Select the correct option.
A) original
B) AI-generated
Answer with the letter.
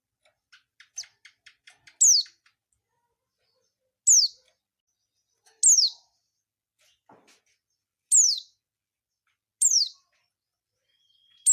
A